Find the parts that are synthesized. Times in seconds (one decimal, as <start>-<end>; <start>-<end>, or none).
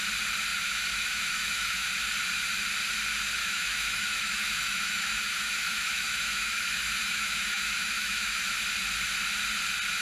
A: 0.5-1.9; 3.4-8.4